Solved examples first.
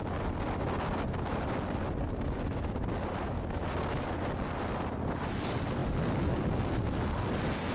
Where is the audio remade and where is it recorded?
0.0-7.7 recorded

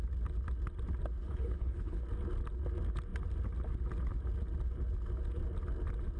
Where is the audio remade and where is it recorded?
0.0-1.2 recorded; 1.2-2.0 remade; 2.0-6.2 recorded

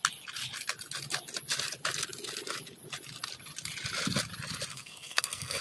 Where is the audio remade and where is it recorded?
0.0-4.7 recorded; 4.7-5.6 remade

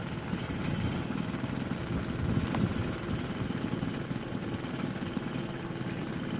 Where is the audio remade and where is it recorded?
0.0-0.7 remade; 0.7-6.4 recorded

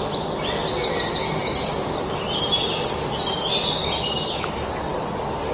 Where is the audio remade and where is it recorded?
0.0-5.5 recorded

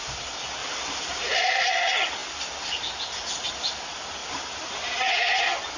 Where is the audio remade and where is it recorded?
0.0-0.6 recorded; 0.6-1.7 remade; 1.7-4.2 recorded; 4.2-4.9 remade; 4.9-5.8 recorded

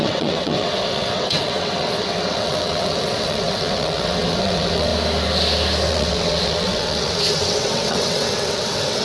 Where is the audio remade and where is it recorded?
0.0-4.9 remade; 4.9-5.9 recorded; 5.9-9.0 remade

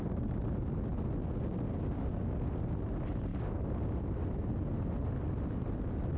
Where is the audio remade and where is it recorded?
0.0-6.2 recorded